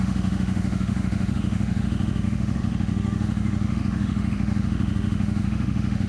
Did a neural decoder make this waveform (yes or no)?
yes